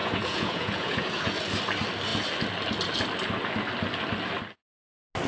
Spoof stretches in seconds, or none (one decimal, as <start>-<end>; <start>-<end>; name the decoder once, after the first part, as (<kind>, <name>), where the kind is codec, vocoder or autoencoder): 0.0-1.4 (vocoder, Vocos)